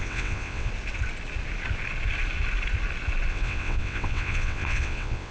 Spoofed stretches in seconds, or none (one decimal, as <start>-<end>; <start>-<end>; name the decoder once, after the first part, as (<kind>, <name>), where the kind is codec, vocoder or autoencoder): 0.0-0.7 (vocoder, WaveNeXt); 3.3-5.3